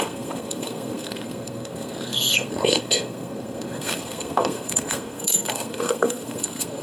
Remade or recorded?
remade